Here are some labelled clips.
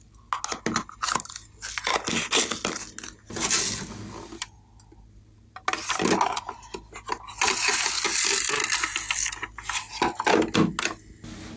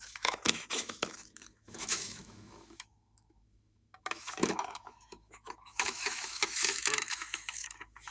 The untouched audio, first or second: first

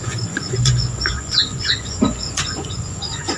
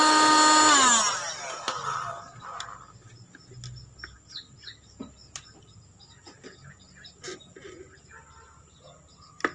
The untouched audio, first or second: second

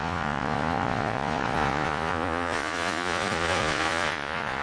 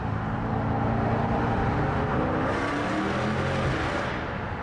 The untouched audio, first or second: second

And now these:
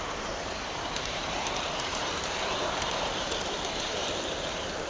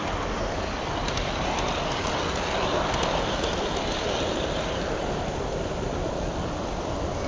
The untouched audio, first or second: second